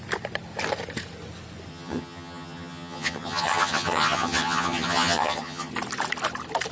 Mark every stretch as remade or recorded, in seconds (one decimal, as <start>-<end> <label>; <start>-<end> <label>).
0.0-1.7 recorded; 1.7-5.7 remade; 5.7-6.7 recorded